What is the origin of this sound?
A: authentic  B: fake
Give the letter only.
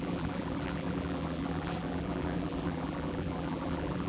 B